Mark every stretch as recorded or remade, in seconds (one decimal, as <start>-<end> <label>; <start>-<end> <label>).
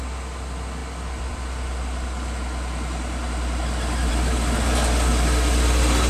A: 0.0-0.8 recorded; 0.8-4.1 remade; 4.1-5.1 recorded; 5.1-6.1 remade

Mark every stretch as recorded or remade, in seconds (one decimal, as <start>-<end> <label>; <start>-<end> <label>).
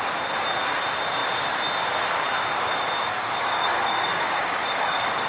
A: 0.0-3.1 recorded; 3.1-5.3 remade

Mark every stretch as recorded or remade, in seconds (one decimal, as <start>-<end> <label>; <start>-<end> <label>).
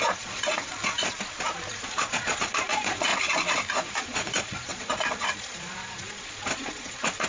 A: 0.0-0.7 remade; 0.7-1.7 recorded; 1.7-3.1 remade; 3.1-3.7 recorded; 3.7-7.3 remade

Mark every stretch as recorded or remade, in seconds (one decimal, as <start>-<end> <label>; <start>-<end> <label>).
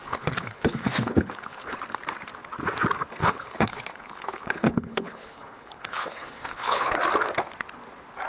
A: 0.0-1.8 remade; 1.8-3.2 recorded; 3.2-7.0 remade; 7.0-8.3 recorded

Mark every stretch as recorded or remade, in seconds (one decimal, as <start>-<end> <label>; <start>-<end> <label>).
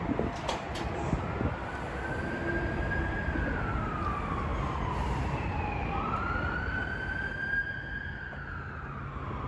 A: 0.0-9.5 recorded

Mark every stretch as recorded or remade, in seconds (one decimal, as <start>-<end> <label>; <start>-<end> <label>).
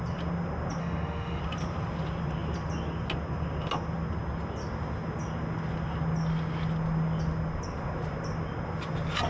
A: 0.0-0.8 recorded; 0.8-1.4 remade; 1.4-9.3 recorded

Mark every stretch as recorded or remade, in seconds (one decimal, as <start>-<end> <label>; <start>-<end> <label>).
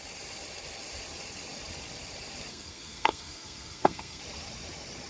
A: 0.0-2.5 recorded; 2.5-4.2 remade; 4.2-5.1 recorded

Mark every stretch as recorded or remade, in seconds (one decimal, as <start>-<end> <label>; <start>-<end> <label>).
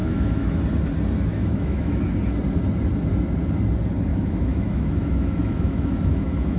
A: 0.0-0.6 remade; 0.6-1.3 recorded; 1.3-2.0 remade; 2.0-4.1 recorded; 4.1-6.6 remade